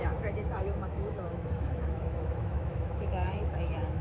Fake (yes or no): yes